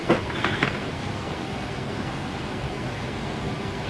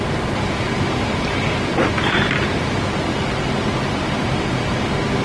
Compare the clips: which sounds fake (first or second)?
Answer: first